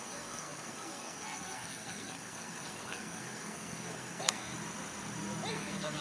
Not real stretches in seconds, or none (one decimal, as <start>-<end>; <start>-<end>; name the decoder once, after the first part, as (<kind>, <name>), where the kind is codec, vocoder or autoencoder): 0.0-4.5 (codec, SNAC); 5.5-6.0